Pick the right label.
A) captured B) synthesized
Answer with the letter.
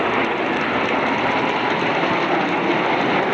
A